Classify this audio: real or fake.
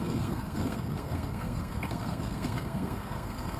fake